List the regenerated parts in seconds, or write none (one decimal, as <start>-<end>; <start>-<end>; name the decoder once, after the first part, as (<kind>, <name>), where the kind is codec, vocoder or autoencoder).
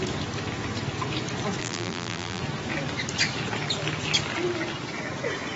1.6-2.4 (vocoder, BigVGAN v2)